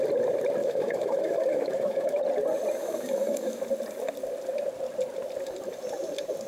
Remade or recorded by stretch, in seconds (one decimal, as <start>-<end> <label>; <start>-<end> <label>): 0.0-0.6 recorded; 0.6-2.2 remade; 2.2-2.8 recorded; 2.8-3.6 remade; 3.6-6.5 recorded